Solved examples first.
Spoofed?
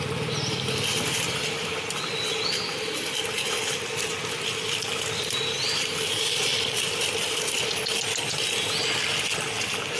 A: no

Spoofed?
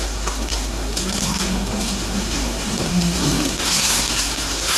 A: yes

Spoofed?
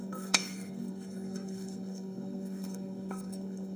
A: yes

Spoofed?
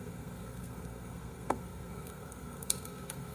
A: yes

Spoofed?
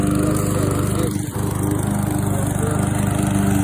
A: no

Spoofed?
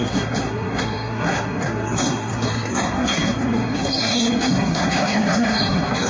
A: yes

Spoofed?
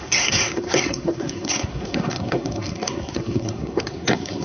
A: yes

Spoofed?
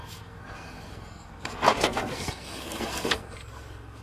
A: yes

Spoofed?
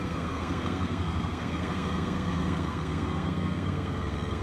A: yes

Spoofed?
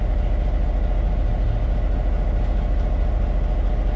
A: no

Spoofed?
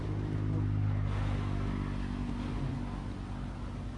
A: no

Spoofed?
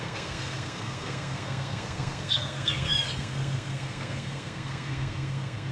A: yes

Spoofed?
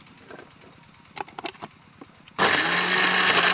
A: no